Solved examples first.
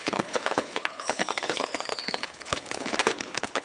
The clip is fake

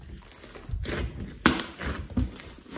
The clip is real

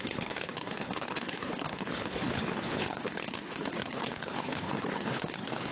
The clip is fake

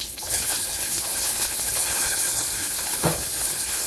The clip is fake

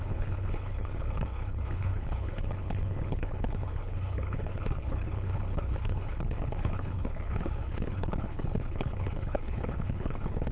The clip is fake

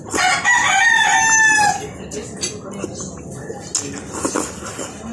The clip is real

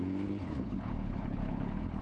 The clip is fake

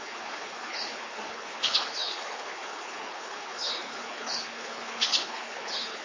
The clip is fake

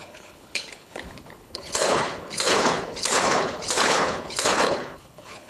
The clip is fake